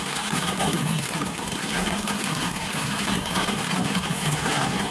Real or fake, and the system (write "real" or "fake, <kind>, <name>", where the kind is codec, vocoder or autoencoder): fake, codec, SNAC